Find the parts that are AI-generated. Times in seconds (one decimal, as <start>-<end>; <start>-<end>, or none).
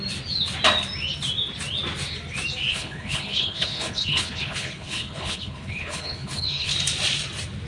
2.7-6.7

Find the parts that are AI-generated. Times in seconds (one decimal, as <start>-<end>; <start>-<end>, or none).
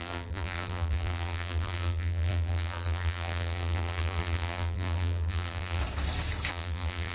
0.0-5.8; 6.5-7.1